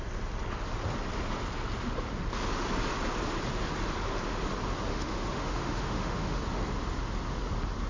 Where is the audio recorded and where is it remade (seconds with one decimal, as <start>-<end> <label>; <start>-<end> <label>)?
0.0-4.9 recorded; 4.9-6.4 remade; 6.4-7.9 recorded